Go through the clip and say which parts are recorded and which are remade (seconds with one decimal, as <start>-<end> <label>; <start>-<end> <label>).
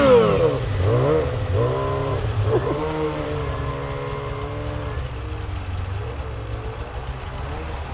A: 0.0-2.0 recorded; 2.0-3.7 remade; 3.7-7.9 recorded